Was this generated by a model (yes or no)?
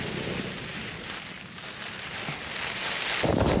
no